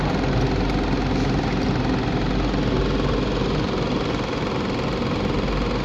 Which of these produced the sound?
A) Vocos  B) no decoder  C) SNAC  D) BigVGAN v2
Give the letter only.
B